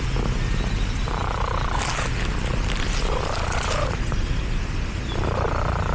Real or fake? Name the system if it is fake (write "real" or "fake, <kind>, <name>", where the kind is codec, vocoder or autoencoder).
real